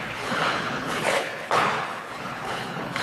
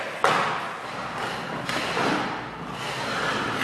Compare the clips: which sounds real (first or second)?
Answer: second